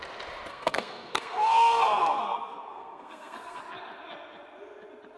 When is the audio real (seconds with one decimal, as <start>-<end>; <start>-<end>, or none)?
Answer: 0.0-0.5; 3.6-5.2

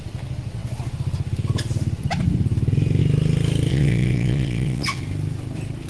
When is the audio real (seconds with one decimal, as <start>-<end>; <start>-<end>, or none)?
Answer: 0.0-3.7; 5.0-5.9

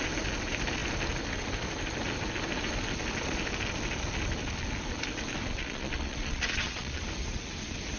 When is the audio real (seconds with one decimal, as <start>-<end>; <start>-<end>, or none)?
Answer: 0.0-5.5; 7.0-8.0

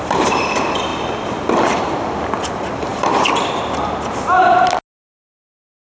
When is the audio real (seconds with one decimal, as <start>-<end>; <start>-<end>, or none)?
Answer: 0.0-5.9

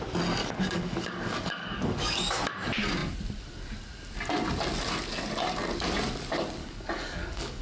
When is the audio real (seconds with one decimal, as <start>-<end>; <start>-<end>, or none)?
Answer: 0.0-0.4; 2.4-6.6